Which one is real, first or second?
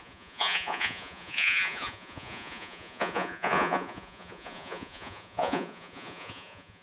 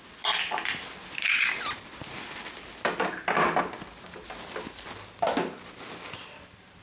second